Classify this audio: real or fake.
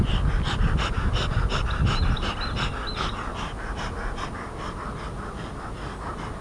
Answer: real